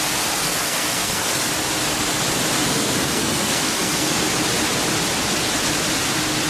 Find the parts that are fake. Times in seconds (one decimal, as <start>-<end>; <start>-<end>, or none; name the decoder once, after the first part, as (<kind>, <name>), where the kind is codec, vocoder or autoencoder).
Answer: 0.4-1.5 (codec, SNAC); 2.7-4.3